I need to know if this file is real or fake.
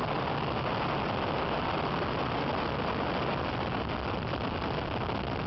real